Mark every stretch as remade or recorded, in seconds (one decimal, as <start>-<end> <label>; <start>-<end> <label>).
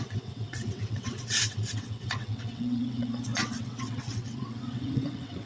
0.0-5.5 remade